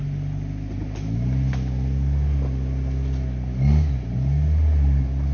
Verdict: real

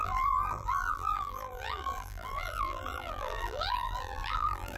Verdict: fake